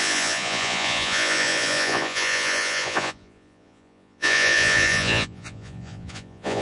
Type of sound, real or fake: fake